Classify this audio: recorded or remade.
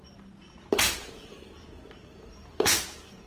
remade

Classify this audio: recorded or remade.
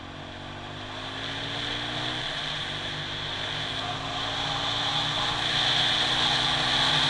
recorded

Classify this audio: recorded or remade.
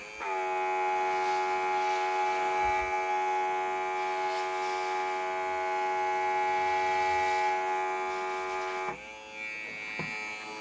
recorded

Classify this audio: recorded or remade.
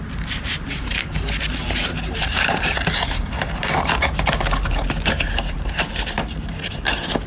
remade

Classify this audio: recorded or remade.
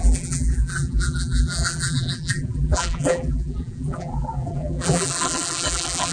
remade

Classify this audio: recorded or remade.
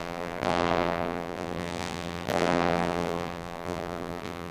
remade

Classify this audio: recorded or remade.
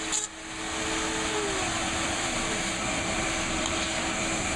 remade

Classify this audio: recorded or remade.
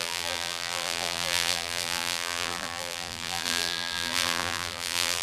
remade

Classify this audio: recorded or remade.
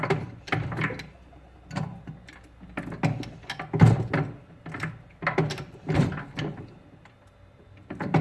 recorded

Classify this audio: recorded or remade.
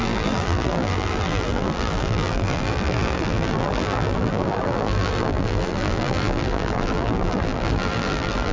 remade